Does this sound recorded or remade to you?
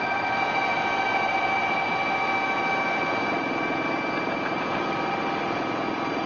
recorded